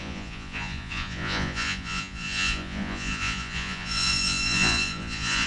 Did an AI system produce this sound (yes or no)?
yes